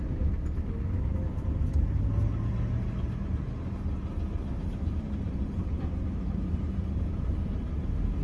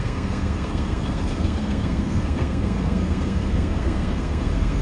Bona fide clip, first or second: first